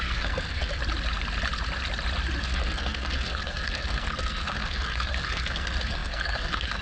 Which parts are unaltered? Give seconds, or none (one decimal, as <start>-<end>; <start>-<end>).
0.8-2.4